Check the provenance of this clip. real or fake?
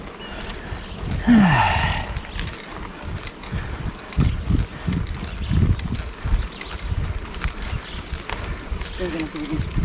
real